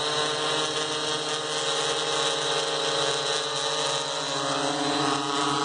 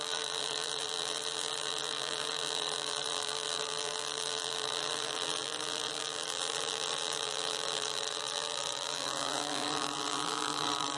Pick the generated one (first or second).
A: second